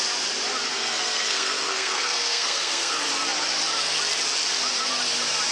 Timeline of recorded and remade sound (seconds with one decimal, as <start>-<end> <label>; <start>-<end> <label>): 0.0-0.7 recorded; 0.7-2.9 remade; 2.9-5.5 recorded